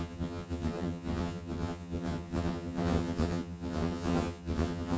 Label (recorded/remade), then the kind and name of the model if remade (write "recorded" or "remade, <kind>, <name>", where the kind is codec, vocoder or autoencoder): remade, vocoder, HiFi-GAN